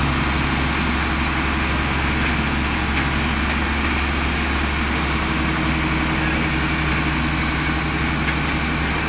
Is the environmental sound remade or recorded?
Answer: recorded